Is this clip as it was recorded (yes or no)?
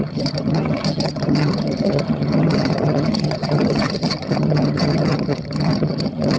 no